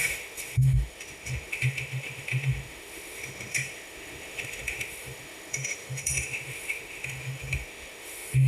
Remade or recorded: remade